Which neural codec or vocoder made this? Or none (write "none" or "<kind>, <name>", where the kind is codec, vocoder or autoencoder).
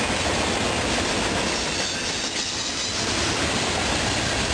none